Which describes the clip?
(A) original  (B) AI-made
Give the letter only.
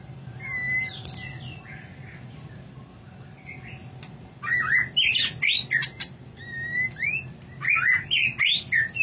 A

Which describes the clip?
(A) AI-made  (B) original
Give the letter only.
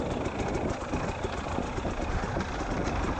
B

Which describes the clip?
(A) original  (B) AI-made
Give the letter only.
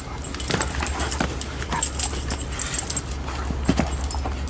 A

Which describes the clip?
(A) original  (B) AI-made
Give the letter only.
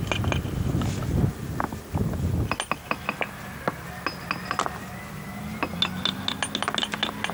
A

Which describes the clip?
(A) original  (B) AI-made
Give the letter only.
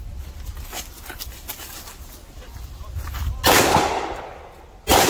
A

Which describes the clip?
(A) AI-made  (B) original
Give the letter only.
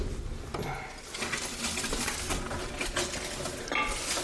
B